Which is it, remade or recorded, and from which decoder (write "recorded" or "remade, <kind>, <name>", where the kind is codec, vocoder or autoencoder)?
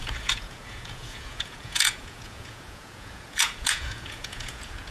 remade, vocoder, Vocos